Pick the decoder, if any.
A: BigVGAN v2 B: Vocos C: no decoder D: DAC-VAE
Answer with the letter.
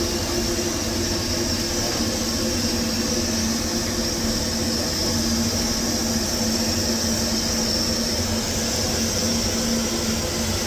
C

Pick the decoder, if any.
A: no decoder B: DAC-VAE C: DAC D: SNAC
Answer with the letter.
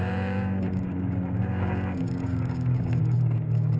C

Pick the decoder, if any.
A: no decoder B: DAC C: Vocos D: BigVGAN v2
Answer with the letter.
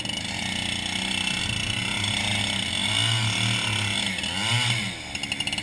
A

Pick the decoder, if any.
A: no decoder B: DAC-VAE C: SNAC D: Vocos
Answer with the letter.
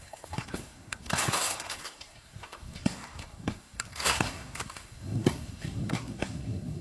C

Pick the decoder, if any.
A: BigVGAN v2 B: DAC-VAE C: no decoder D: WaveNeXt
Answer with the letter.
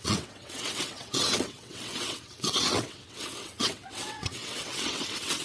D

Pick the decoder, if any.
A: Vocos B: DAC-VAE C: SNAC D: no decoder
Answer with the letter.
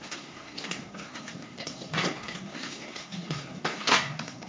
C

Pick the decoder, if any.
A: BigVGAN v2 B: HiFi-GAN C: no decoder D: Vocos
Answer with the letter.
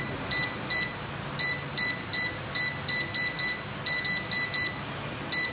C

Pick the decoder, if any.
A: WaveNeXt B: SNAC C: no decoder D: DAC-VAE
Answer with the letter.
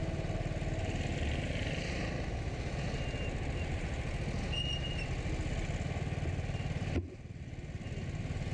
C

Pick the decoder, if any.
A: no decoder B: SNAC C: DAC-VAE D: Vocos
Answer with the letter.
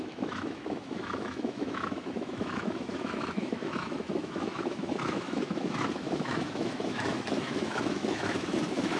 C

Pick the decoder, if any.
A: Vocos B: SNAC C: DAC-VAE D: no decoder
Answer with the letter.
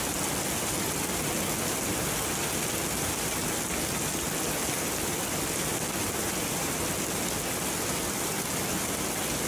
D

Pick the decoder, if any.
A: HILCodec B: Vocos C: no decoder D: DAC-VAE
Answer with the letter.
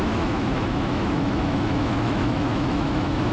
D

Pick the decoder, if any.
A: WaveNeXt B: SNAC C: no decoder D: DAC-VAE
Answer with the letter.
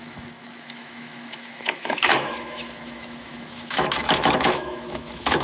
D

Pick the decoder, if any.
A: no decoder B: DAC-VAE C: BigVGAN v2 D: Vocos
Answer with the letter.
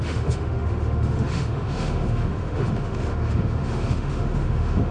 B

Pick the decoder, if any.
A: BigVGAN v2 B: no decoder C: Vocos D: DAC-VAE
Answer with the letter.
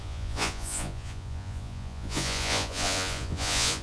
C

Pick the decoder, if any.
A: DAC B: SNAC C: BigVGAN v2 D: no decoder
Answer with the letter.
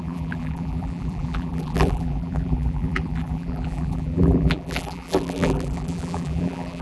C